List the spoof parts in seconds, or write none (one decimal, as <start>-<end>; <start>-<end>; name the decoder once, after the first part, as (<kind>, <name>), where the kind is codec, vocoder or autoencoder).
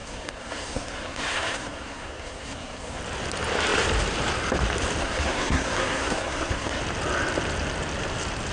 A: 0.0-3.0 (codec, SNAC); 5.0-6.8